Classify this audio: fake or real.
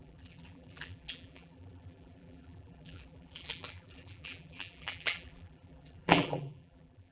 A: fake